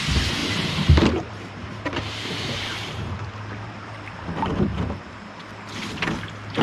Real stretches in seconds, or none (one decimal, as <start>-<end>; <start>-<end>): 0.0-0.4; 4.0-4.7; 5.4-6.6